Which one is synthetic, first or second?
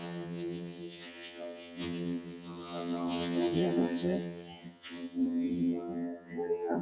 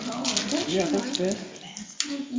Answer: first